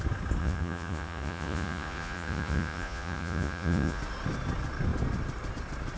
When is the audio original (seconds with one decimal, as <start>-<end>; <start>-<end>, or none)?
0.0-0.4; 4.0-6.0